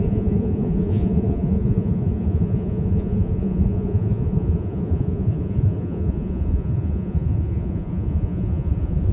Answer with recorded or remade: remade